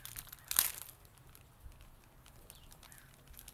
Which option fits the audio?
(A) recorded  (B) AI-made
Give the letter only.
A